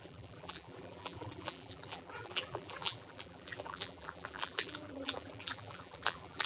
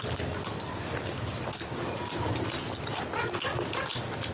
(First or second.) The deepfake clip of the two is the first